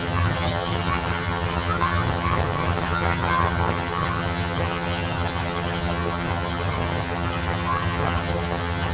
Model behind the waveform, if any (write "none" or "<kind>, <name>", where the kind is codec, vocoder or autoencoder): vocoder, HiFi-GAN